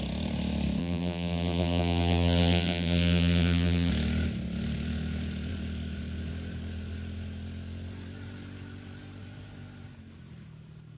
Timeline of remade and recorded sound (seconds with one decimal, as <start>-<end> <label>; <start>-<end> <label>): 0.0-0.8 recorded; 0.8-3.9 remade; 3.9-11.0 recorded